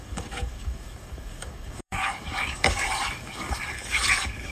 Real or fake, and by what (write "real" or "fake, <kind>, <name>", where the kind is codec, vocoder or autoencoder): fake, codec, DAC